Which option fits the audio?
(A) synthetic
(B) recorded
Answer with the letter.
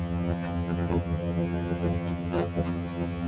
A